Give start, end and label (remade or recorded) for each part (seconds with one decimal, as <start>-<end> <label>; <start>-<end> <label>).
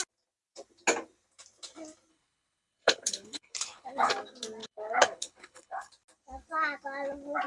0.0-2.1 recorded; 2.1-4.1 remade; 4.1-4.6 recorded; 4.6-5.9 remade; 5.9-7.5 recorded